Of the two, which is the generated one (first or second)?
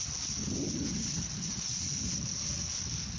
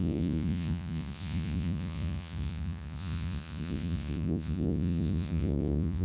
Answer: second